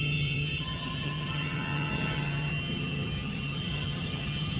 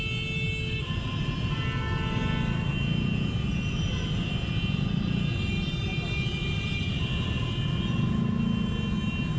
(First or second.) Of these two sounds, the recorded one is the second